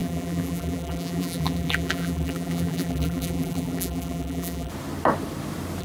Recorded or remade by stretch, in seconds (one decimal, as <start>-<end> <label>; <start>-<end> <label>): 0.0-4.7 remade; 4.7-5.8 recorded